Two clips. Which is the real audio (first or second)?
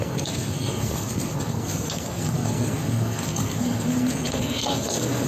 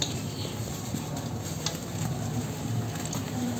second